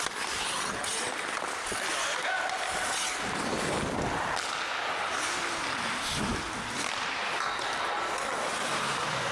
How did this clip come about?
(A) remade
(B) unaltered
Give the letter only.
B